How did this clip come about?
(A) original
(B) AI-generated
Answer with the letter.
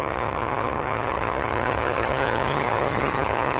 B